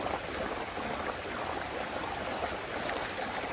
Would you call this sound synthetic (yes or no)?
no